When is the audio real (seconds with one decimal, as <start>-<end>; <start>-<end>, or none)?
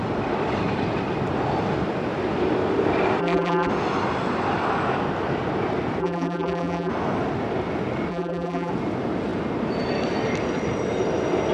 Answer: 0.0-3.2; 3.7-6.0; 6.9-8.1; 8.7-11.5